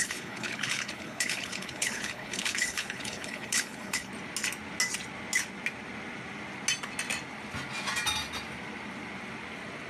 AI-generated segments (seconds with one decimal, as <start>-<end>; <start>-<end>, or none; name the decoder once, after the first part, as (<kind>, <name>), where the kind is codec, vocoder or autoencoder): 0.0-4.1 (codec, HILCodec)